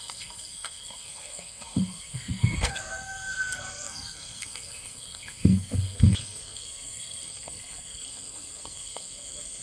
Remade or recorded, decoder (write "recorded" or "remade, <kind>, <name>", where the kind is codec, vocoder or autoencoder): remade, codec, SNAC